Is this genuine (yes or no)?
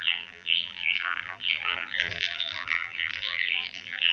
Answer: no